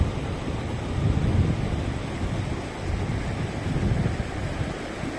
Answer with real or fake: real